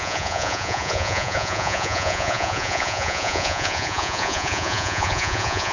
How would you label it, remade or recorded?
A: remade